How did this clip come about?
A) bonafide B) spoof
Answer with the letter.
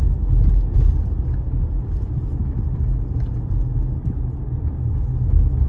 A